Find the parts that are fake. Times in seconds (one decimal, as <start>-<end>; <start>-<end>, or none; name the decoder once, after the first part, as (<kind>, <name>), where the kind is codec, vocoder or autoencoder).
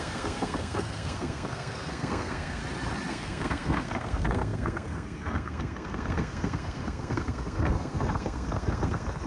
0.0-2.6 (codec, SNAC); 3.1-9.3